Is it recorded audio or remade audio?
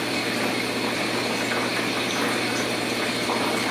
recorded